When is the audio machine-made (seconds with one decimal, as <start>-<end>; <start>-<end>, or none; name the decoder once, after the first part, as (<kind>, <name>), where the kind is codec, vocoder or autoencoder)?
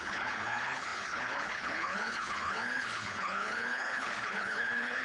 0.0-5.0 (codec, HILCodec)